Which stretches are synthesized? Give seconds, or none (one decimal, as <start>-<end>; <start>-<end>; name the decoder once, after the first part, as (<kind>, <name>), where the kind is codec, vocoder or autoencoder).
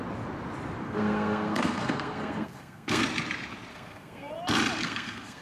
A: 0.8-3.0 (codec, SNAC); 3.7-4.3; 4.8-5.4